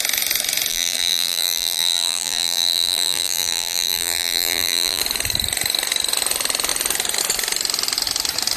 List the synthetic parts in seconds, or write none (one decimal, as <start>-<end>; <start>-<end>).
0.7-5.0

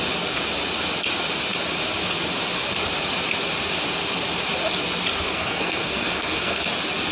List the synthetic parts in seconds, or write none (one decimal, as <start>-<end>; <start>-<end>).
5.3-6.6

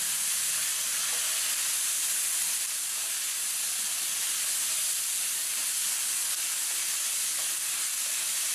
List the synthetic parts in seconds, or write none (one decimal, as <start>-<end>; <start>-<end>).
none

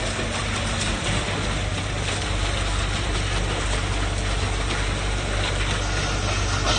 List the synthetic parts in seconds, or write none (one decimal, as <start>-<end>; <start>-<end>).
0.4-1.0

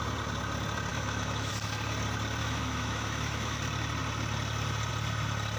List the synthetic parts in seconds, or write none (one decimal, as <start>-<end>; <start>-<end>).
0.9-1.5; 2.4-3.6

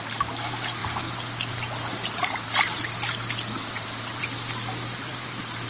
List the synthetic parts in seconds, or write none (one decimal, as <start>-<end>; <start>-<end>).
none

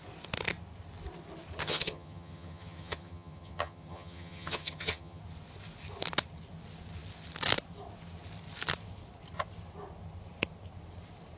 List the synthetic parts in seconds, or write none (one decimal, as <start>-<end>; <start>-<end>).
1.6-5.2